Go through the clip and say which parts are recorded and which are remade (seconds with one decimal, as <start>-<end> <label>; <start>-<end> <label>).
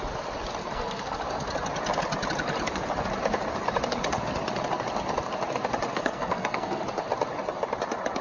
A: 0.0-0.6 recorded; 0.6-1.1 remade; 1.1-5.9 recorded; 5.9-6.8 remade; 6.8-8.2 recorded